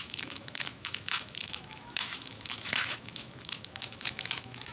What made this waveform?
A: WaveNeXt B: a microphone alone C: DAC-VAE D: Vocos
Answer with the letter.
C